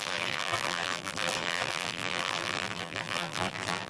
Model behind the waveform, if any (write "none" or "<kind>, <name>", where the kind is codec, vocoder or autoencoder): vocoder, BigVGAN v2